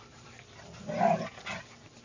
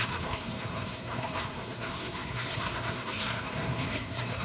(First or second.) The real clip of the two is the first